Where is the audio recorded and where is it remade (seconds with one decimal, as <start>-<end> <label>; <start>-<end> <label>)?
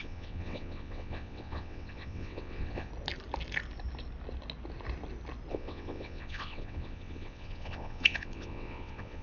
0.0-2.9 remade; 2.9-5.5 recorded; 5.5-9.2 remade